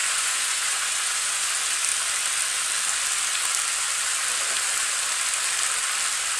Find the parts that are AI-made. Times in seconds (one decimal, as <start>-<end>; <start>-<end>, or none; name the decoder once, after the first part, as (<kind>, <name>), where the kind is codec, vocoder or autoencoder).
0.0-1.5 (vocoder, Vocos)